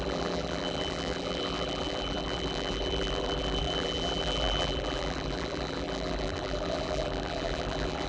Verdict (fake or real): fake